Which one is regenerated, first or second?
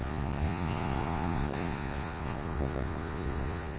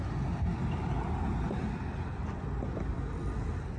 first